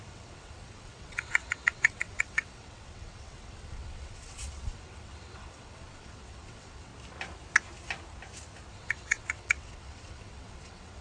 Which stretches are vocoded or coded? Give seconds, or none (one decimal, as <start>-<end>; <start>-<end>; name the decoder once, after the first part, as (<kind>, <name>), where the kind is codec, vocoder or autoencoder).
0.0-6.9 (vocoder, WaveNeXt); 8.7-11.0